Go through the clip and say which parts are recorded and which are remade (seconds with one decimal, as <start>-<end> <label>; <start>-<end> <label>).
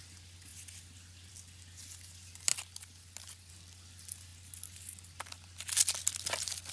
0.0-6.7 recorded